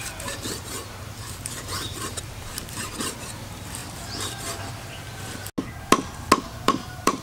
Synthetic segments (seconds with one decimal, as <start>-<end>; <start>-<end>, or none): 0.0-3.8; 6.4-7.2